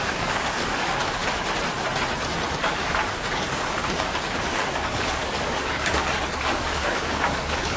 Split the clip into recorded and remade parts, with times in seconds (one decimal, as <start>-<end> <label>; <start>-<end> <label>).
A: 0.0-1.2 remade; 1.2-2.5 recorded; 2.5-7.8 remade